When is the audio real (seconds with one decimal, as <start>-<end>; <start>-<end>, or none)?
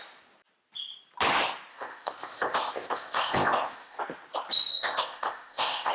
0.0-1.7; 4.0-4.7